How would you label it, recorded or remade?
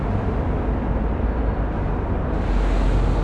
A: recorded